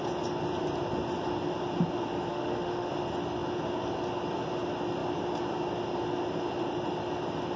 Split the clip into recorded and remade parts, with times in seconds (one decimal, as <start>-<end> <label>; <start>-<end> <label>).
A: 0.0-2.3 recorded; 2.3-2.9 remade; 2.9-7.6 recorded